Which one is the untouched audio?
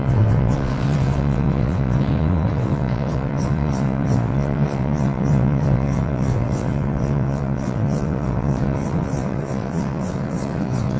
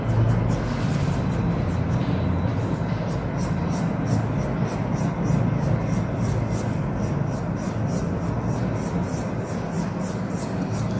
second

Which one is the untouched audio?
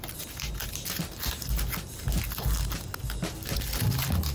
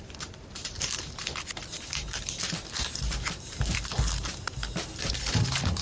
first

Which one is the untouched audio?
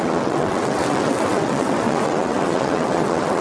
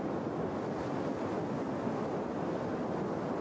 second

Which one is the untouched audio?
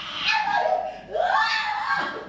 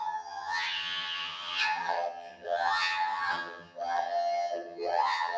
first